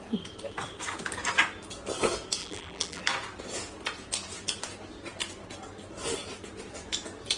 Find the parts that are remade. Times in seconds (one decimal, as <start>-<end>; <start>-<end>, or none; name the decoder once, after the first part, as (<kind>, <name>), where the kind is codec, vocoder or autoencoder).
2.4-3.0 (vocoder, BigVGAN v2)